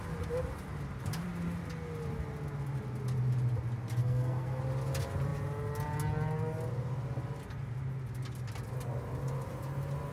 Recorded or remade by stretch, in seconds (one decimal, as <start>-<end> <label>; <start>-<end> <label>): 0.0-4.0 recorded; 4.0-4.6 remade; 4.6-10.1 recorded